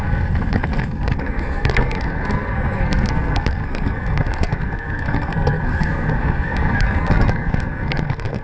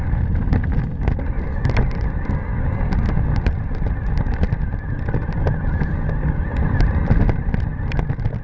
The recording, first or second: second